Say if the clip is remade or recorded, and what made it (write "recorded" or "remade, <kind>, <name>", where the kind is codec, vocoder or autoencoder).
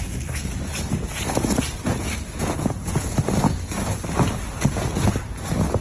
recorded